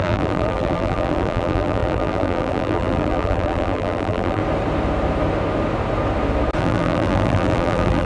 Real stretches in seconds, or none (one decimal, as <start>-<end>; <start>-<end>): 4.4-6.6